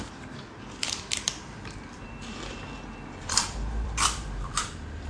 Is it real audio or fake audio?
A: fake